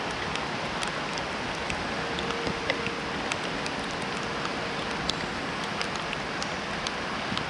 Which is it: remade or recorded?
recorded